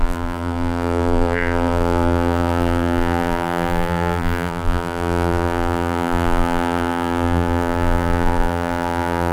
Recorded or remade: remade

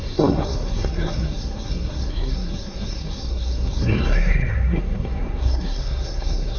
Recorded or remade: remade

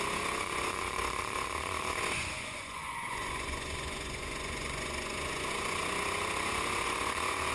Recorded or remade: remade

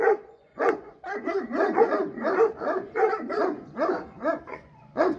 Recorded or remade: remade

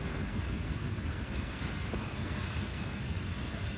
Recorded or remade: remade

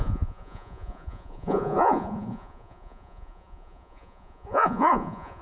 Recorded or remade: remade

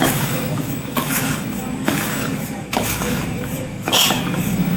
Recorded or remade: remade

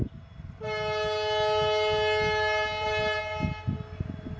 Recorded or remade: recorded